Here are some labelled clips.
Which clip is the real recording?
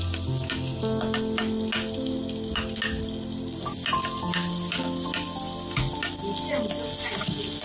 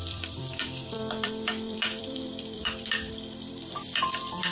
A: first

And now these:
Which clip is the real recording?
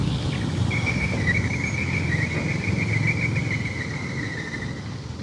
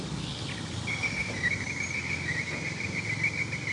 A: second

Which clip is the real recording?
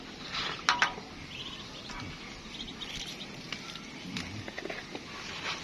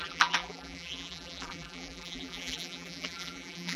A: first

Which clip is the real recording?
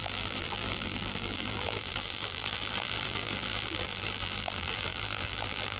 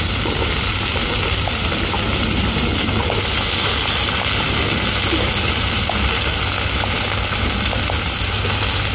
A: second